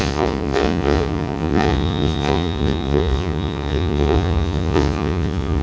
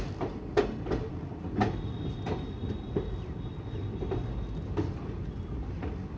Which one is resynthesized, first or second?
first